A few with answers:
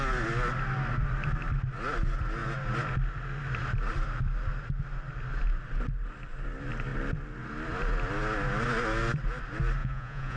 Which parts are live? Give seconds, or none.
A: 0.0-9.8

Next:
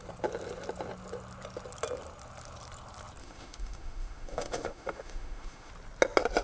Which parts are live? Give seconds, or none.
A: 0.0-3.2; 5.7-6.4

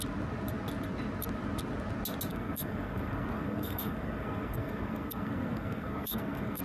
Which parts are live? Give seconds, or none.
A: 0.0-2.3

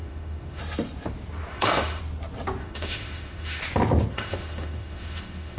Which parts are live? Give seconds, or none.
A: 0.6-1.5; 2.0-2.6; 3.6-4.1

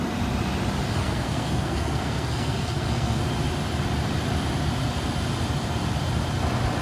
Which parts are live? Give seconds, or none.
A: 0.0-1.0; 3.2-6.8

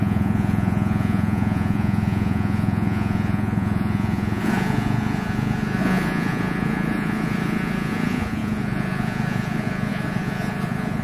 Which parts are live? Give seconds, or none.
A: none

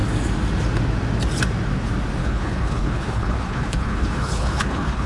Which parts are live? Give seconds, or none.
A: 0.0-2.2

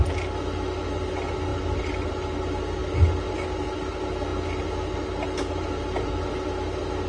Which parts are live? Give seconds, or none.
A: 0.0-7.1